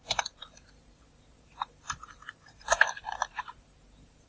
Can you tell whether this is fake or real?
fake